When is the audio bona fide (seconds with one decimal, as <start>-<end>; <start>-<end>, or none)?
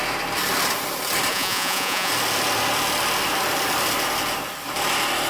0.0-1.3; 2.1-5.3